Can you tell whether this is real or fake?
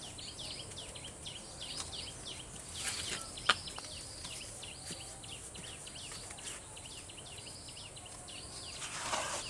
real